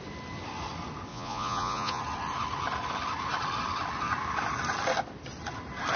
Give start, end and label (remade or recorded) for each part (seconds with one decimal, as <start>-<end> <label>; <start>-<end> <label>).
0.0-1.1 recorded; 1.1-2.0 remade; 2.0-6.0 recorded